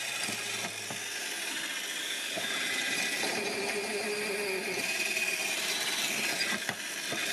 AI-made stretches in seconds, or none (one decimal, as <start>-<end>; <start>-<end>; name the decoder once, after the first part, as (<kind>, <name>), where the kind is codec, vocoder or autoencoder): 2.0-2.5 (codec, DAC)